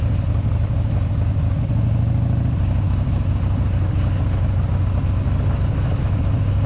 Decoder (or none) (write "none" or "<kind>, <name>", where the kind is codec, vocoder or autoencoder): none